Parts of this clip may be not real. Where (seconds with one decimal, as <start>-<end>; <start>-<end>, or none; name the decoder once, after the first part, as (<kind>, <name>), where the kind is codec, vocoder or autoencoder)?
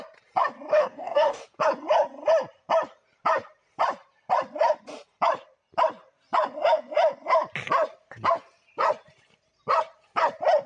0.7-1.4 (codec, DAC)